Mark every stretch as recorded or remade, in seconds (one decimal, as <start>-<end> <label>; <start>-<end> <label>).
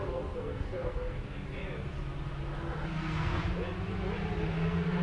0.0-1.6 remade; 1.6-2.6 recorded; 2.6-3.4 remade; 3.4-4.4 recorded; 4.4-5.0 remade